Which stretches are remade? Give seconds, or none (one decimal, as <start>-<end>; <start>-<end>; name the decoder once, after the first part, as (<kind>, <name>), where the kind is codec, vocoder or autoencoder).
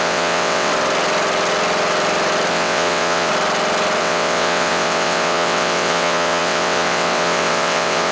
0.0-0.7 (vocoder, WaveNeXt); 2.5-3.3; 4.0-8.1